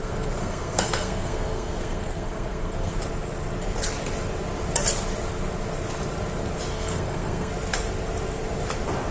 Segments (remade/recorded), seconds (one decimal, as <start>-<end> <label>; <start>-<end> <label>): 0.0-3.0 remade; 3.0-6.7 recorded; 6.7-7.5 remade; 7.5-9.1 recorded